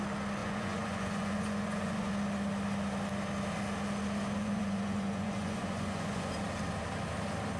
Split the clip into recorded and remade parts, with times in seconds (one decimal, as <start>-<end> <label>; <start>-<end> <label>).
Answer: 0.0-0.4 recorded; 0.4-2.1 remade; 2.1-4.4 recorded; 4.4-6.3 remade; 6.3-7.6 recorded